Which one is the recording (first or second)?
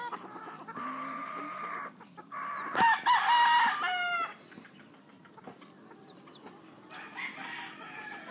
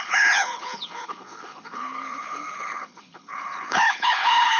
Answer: first